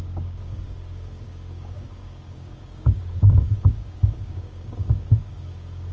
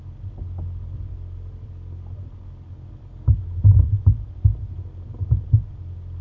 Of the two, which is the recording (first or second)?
second